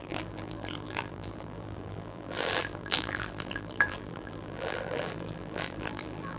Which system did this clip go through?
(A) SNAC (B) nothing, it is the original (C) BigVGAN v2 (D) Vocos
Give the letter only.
C